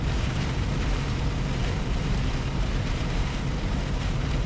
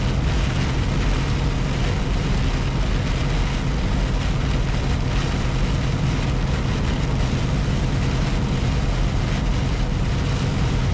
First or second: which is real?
second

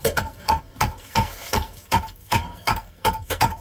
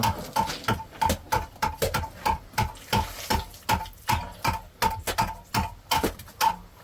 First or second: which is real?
second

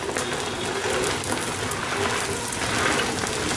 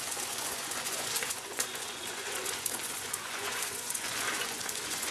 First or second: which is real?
first